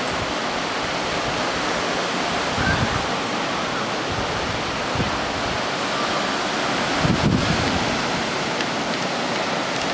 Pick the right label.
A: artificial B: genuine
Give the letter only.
B